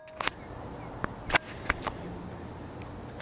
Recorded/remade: recorded